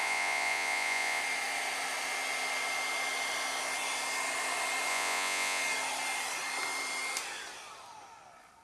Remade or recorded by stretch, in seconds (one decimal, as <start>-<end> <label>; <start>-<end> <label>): 0.0-1.2 remade; 1.2-4.9 recorded; 4.9-5.6 remade; 5.6-8.6 recorded

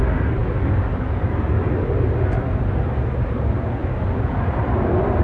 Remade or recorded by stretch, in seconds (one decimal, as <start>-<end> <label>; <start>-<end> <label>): 0.0-5.2 recorded

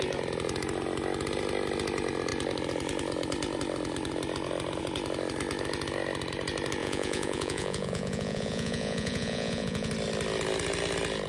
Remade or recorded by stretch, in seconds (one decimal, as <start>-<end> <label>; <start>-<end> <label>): 0.0-6.8 recorded; 6.8-9.9 remade; 9.9-11.3 recorded